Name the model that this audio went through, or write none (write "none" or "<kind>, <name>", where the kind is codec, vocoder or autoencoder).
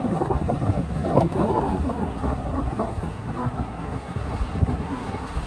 codec, SNAC